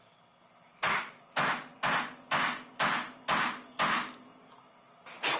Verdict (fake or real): real